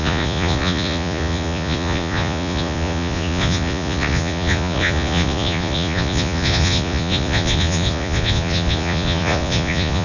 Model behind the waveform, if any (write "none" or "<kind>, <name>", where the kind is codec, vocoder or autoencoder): vocoder, Vocos